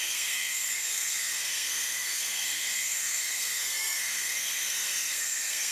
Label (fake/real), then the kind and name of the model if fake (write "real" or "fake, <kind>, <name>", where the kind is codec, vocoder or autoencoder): fake, codec, SNAC